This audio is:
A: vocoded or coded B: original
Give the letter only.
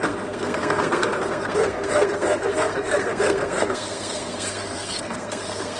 A